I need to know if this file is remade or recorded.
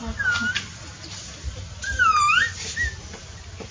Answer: recorded